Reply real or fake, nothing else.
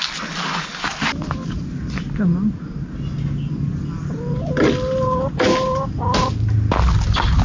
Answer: real